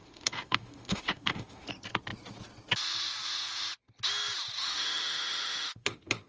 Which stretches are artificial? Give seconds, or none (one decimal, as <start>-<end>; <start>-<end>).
0.0-1.7; 4.6-6.3